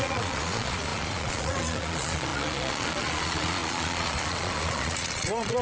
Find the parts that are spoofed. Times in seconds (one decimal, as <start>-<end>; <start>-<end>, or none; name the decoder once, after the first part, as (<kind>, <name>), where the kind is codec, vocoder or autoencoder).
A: 0.0-5.6 (vocoder, Vocos)